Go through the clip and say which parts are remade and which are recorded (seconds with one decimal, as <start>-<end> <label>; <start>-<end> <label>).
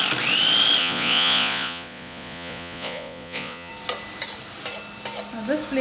0.0-0.8 recorded; 0.8-3.7 remade; 3.7-5.8 recorded